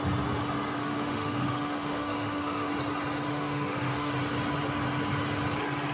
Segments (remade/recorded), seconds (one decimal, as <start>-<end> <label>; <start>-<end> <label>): 0.0-0.8 recorded; 0.8-2.7 remade; 2.7-3.3 recorded; 3.3-4.1 remade; 4.1-5.9 recorded